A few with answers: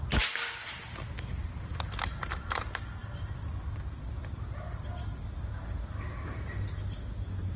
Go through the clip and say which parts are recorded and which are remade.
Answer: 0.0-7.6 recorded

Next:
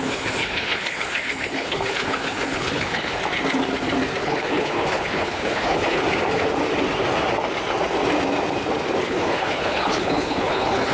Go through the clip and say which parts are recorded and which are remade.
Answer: 0.0-3.2 remade; 3.2-4.2 recorded; 4.2-6.0 remade; 6.0-9.0 recorded; 9.0-10.9 remade

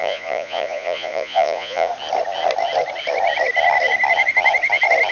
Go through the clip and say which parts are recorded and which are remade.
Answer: 0.0-1.9 remade; 1.9-5.1 recorded

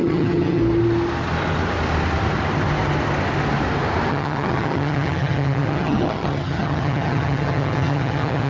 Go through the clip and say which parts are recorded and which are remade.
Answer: 0.0-0.6 remade; 0.6-4.1 recorded; 4.1-8.5 remade

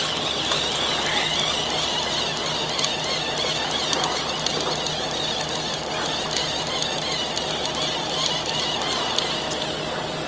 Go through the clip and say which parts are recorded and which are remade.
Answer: 0.0-10.3 recorded